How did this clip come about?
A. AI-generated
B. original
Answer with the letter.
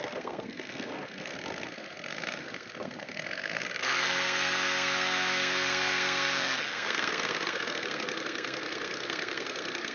A